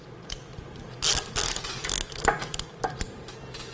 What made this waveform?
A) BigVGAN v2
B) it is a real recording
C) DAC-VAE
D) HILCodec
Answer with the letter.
B